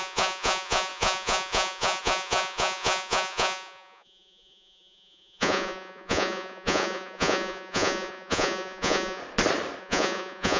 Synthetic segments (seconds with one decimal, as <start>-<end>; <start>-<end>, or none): 0.0-9.2; 9.8-10.6